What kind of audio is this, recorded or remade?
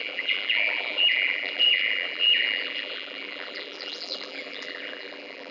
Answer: remade